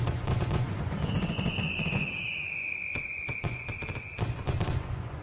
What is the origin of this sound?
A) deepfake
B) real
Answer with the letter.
A